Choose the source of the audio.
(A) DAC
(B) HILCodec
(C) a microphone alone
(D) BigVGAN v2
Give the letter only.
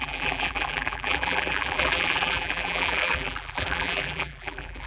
D